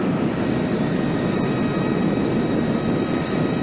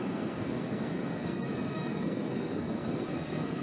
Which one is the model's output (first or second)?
second